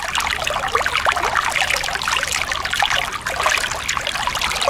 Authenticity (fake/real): real